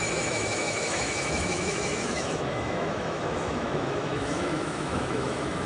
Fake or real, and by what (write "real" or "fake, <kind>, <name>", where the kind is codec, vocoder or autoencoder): fake, autoencoder, DAC-VAE